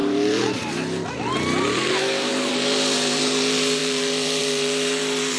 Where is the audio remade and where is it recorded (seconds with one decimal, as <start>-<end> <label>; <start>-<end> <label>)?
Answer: 0.0-5.4 remade